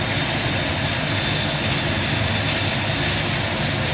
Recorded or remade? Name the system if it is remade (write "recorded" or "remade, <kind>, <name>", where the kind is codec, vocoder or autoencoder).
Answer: recorded